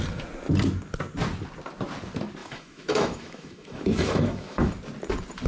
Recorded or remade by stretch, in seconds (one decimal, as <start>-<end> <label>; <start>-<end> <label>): 0.0-2.4 recorded; 2.4-4.7 remade; 4.7-5.5 recorded